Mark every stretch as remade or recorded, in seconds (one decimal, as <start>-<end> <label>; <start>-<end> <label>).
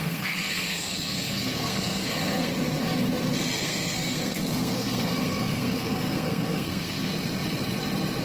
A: 0.0-2.5 remade; 2.5-3.6 recorded; 3.6-7.1 remade; 7.1-8.2 recorded